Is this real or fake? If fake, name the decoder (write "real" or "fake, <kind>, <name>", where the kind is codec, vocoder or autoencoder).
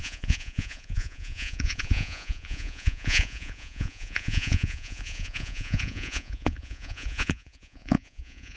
fake, vocoder, Vocos